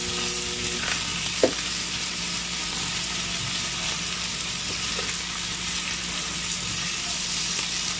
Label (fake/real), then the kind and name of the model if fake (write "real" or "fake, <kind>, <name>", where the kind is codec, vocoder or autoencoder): fake, vocoder, BigVGAN v2